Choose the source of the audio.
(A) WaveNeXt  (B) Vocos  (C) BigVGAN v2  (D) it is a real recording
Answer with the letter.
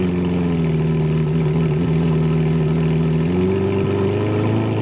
D